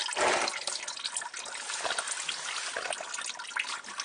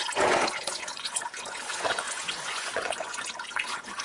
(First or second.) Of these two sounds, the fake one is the second